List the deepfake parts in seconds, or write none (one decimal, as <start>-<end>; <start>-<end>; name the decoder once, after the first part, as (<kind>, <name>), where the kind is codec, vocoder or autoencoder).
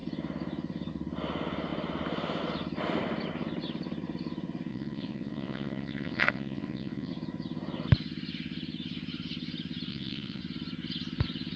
4.7-7.1 (vocoder, WaveNeXt); 9.9-10.4